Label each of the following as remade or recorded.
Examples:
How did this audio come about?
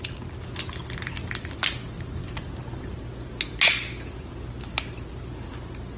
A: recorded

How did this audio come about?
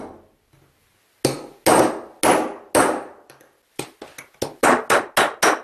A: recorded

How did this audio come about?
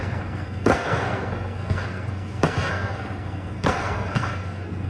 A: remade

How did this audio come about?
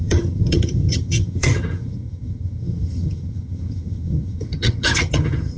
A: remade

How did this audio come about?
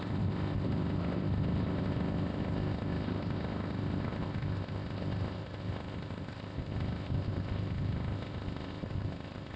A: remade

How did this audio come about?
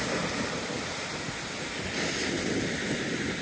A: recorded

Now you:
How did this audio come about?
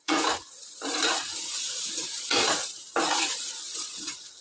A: remade